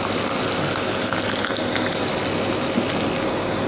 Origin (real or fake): real